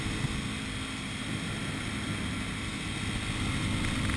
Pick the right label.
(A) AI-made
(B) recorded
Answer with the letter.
B